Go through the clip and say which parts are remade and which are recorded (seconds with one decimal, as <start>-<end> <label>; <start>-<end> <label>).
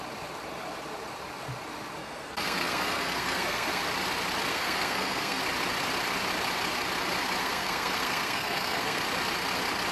0.0-2.0 recorded; 2.0-3.8 remade; 3.8-4.5 recorded; 4.5-5.4 remade; 5.4-7.4 recorded; 7.4-9.0 remade; 9.0-9.9 recorded